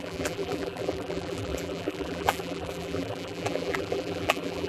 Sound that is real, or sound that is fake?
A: fake